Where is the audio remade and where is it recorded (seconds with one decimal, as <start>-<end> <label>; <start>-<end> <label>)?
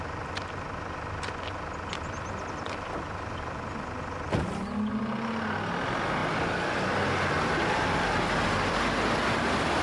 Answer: 0.0-9.8 recorded